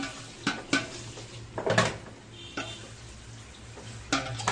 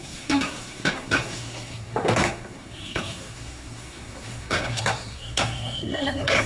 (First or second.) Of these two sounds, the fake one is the second